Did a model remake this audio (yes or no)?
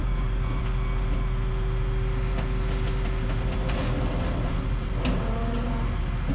no